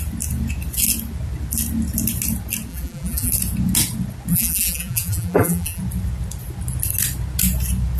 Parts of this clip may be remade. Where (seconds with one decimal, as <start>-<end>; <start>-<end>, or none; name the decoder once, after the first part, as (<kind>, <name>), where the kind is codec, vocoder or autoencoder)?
2.7-3.3 (vocoder, BigVGAN v2); 4.3-5.8